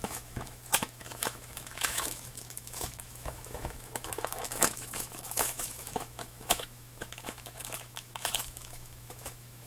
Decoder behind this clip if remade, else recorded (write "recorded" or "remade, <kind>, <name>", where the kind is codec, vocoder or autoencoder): remade, autoencoder, DAC-VAE